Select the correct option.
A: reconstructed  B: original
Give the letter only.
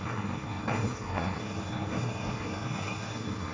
A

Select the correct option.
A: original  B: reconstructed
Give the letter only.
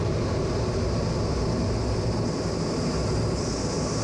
A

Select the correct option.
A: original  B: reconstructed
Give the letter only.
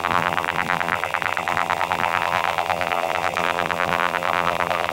B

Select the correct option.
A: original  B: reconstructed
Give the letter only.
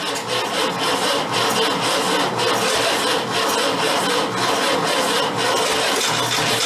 A